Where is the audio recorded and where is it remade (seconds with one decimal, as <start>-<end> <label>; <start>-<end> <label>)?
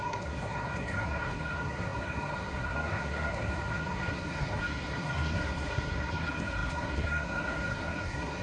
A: 0.0-8.4 remade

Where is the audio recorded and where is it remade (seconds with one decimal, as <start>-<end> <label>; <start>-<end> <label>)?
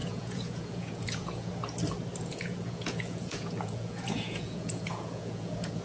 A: 0.0-1.5 remade; 1.5-2.2 recorded; 2.2-5.8 remade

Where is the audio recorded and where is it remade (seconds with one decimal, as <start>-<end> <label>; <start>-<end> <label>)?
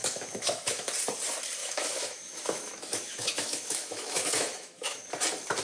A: 0.0-0.9 remade; 0.9-1.6 recorded; 1.6-5.0 remade; 5.0-5.6 recorded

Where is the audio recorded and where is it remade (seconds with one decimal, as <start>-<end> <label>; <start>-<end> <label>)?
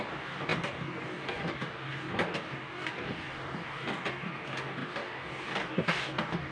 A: 0.0-6.5 remade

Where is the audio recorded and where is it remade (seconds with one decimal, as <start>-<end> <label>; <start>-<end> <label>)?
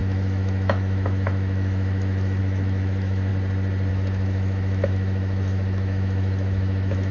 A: 0.0-3.3 remade; 3.3-3.9 recorded; 3.9-7.1 remade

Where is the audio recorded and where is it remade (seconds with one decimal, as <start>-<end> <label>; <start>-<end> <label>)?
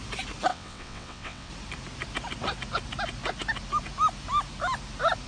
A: 0.0-0.5 recorded; 0.5-1.5 remade; 1.5-5.3 recorded